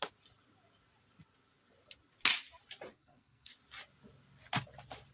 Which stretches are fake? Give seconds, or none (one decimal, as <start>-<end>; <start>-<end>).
2.9-3.5